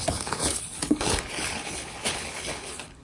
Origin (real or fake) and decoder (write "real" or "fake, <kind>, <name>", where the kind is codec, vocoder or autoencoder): fake, codec, HILCodec